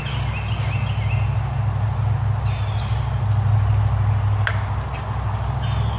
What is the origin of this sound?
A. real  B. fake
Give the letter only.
A